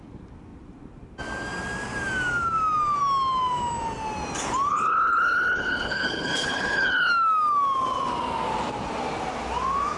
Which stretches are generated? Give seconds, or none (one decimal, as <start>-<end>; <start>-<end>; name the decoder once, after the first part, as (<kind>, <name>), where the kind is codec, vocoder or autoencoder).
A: 4.7-7.1 (codec, HILCodec)

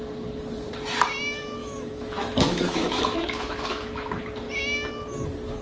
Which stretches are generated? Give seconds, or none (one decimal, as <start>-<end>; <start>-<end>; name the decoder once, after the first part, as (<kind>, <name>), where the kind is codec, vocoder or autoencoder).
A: 1.6-4.2 (autoencoder, DAC-VAE)

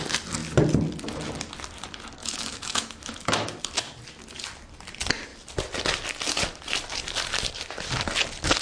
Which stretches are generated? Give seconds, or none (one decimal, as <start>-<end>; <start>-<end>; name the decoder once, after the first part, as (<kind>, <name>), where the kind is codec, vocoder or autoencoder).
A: 2.2-3.6 (autoencoder, DAC-VAE)

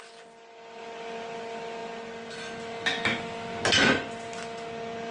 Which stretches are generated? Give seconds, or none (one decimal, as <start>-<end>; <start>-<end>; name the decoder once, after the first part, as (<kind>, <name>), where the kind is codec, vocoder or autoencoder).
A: none

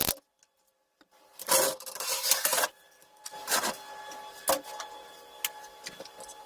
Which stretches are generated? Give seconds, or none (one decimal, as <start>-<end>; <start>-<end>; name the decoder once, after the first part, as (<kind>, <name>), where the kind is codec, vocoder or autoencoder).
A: 0.0-2.5 (vocoder, BigVGAN v2)

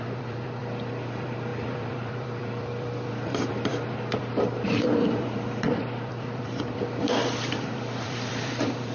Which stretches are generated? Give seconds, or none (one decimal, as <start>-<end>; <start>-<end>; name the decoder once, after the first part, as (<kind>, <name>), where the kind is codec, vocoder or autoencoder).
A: 0.0-8.9 (vocoder, BigVGAN v2)

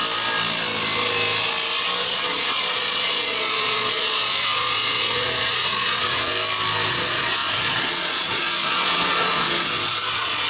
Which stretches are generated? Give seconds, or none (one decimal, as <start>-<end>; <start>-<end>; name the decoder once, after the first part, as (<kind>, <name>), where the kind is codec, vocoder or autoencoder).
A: 2.0-6.3 (vocoder, Vocos); 6.9-10.5